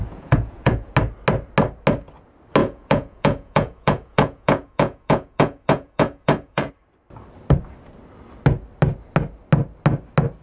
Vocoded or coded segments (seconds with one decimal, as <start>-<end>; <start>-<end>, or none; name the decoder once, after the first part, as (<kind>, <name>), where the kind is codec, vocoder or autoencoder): 0.0-0.9 (vocoder, Vocos); 2.6-6.7